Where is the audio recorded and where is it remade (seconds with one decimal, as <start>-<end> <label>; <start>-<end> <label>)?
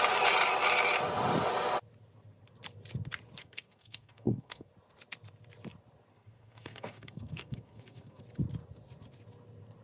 0.0-3.4 recorded; 3.4-4.7 remade; 4.7-6.1 recorded; 6.1-8.2 remade; 8.2-9.8 recorded